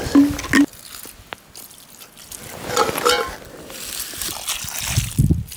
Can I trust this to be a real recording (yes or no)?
yes